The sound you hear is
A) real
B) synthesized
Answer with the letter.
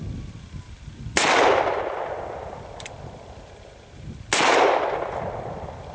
B